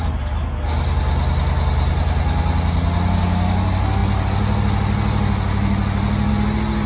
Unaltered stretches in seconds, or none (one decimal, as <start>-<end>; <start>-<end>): 0.0-6.9

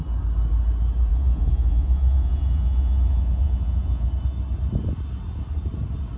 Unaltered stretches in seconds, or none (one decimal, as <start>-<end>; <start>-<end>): 0.0-1.1; 4.1-6.2

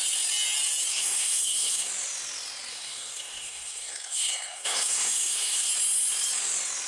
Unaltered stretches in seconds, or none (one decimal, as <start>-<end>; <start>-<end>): 0.0-0.9; 1.9-2.7; 5.7-6.9